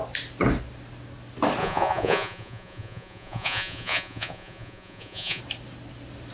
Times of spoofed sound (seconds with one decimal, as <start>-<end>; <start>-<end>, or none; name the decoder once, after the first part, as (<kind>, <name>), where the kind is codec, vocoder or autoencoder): 1.6-5.4 (vocoder, Vocos)

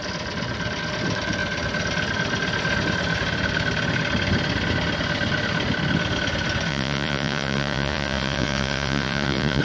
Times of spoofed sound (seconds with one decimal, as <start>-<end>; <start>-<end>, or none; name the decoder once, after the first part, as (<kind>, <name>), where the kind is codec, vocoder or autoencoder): 6.7-9.6 (vocoder, Vocos)